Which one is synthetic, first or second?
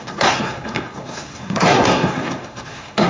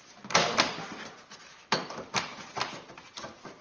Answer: first